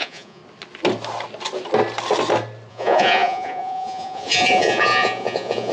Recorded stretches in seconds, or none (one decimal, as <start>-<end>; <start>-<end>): 0.4-2.7